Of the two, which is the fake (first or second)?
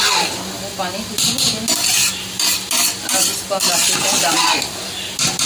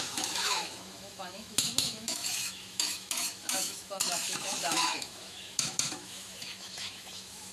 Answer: second